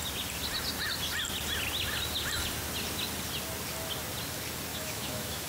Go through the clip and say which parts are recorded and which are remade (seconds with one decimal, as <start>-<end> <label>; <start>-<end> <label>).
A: 0.0-4.7 recorded; 4.7-5.5 remade